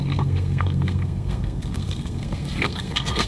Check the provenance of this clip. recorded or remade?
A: remade